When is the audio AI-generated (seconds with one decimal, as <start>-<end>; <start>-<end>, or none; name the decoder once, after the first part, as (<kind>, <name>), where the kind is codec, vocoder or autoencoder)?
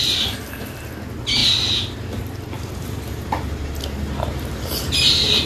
none